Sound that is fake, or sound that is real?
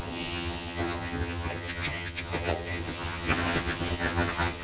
fake